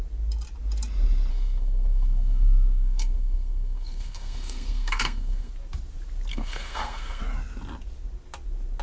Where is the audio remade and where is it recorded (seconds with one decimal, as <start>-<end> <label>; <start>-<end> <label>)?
0.0-1.3 recorded; 1.3-5.5 remade; 5.5-6.3 recorded; 6.3-7.2 remade; 7.2-8.8 recorded

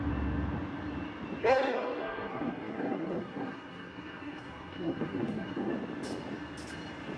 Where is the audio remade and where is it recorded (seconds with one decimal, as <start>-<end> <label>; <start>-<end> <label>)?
0.0-1.4 recorded; 1.4-5.7 remade; 5.7-7.2 recorded